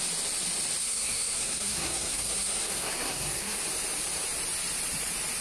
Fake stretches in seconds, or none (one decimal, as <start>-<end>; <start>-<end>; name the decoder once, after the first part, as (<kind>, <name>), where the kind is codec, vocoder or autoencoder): 0.8-3.6 (codec, SNAC)